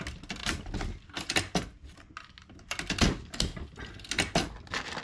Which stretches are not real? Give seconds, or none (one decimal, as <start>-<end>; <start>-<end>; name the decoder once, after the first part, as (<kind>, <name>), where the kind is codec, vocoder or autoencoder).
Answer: none